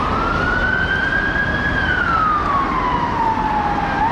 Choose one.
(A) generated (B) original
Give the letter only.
B